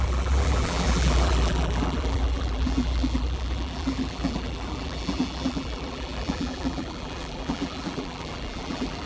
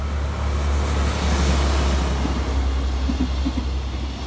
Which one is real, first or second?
second